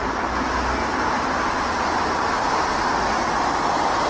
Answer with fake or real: real